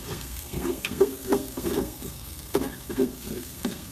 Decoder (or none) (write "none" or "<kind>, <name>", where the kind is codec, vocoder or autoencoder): codec, SNAC